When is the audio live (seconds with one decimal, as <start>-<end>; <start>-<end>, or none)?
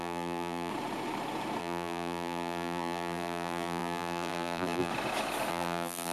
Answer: 0.7-1.6; 4.9-5.5